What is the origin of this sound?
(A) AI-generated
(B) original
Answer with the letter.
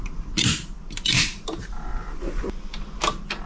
B